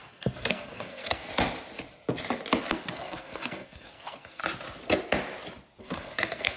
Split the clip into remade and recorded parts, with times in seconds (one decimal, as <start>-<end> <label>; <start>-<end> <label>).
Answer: 0.0-1.3 remade; 1.3-2.7 recorded; 2.7-4.4 remade; 4.4-5.8 recorded; 5.8-6.6 remade